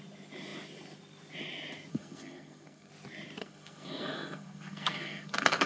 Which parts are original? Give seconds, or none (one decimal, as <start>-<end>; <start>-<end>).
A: 0.0-1.9; 2.9-3.4